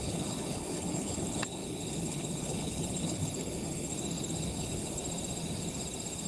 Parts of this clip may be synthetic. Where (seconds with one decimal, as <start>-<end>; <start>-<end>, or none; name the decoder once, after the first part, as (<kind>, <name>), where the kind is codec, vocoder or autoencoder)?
0.0-3.9 (codec, HILCodec); 4.5-5.0